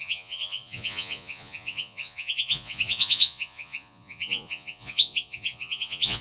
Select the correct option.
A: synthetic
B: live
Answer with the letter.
A